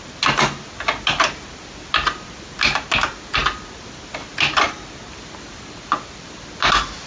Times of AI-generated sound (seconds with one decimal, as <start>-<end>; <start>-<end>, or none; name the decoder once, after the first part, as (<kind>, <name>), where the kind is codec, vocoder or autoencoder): none